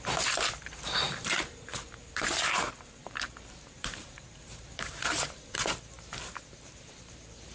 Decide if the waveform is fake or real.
fake